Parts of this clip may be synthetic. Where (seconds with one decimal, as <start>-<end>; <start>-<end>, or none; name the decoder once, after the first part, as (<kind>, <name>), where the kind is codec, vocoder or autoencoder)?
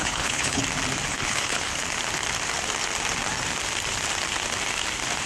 0.0-0.6 (codec, HILCodec); 1.1-1.7